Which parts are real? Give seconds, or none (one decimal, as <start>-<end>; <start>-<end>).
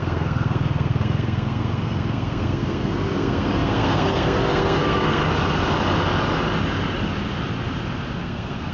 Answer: 5.2-8.2